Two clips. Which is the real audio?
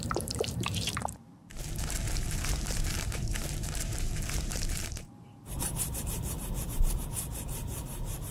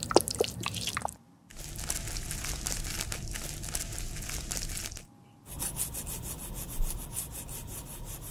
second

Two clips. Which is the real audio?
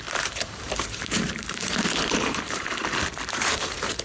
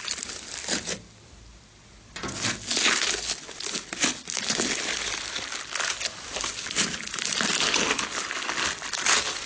second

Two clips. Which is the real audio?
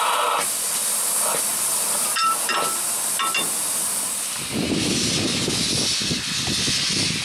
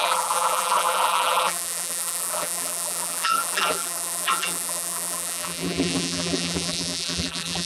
first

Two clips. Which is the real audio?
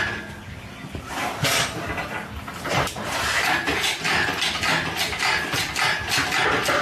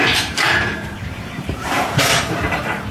first